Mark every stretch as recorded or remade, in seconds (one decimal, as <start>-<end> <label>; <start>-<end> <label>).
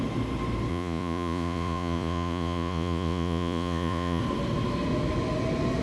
0.0-0.7 recorded; 0.7-4.2 remade; 4.2-5.8 recorded